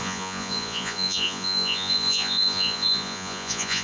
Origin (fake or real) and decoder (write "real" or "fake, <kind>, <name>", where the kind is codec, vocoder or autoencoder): fake, vocoder, Vocos